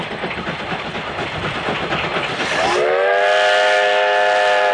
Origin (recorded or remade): recorded